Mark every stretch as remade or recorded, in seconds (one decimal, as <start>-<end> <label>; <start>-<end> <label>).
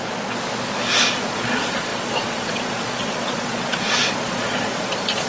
0.0-1.2 recorded; 1.2-5.3 remade